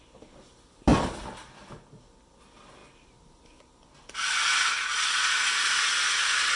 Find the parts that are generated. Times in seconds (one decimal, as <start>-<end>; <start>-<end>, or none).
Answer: none